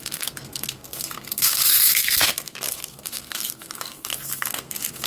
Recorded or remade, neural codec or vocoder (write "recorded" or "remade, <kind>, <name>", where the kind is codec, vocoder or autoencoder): remade, codec, SNAC